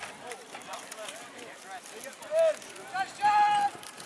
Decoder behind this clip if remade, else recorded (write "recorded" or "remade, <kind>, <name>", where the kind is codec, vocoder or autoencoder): recorded